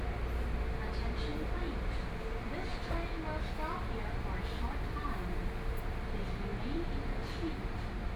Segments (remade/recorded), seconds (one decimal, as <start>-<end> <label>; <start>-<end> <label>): 0.0-1.3 recorded; 1.3-2.1 remade; 2.1-6.5 recorded; 6.5-8.2 remade